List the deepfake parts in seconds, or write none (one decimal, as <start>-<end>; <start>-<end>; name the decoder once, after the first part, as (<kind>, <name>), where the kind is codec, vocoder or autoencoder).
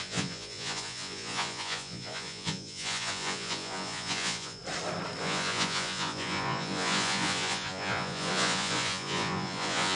0.0-4.6 (vocoder, Vocos); 5.2-10.0